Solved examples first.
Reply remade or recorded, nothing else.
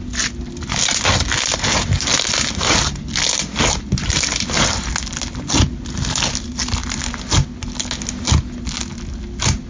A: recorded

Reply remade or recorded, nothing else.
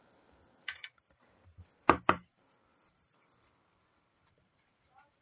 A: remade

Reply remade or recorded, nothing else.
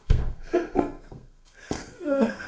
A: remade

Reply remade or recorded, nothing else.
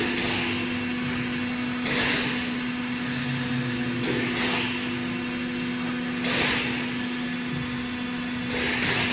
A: recorded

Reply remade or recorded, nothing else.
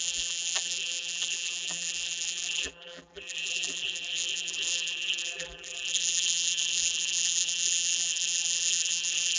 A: remade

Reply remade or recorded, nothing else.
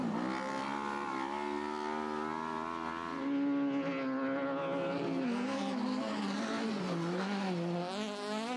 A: recorded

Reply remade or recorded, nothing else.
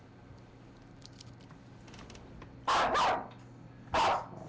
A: recorded